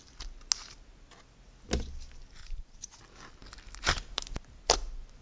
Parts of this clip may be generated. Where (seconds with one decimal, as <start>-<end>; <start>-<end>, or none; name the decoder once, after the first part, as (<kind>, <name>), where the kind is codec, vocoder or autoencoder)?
2.4-3.0 (vocoder, BigVGAN v2)